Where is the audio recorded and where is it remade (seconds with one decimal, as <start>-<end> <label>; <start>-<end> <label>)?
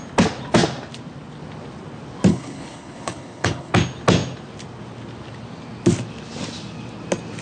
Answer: 0.0-2.3 recorded; 2.3-3.7 remade; 3.7-7.4 recorded